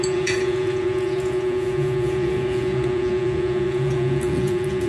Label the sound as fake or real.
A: fake